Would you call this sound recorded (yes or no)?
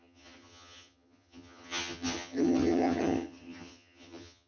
no